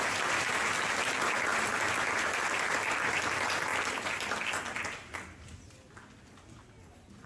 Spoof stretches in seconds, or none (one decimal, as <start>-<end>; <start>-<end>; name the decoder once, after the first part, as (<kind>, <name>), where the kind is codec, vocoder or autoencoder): none